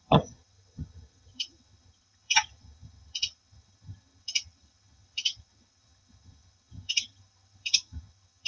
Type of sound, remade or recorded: remade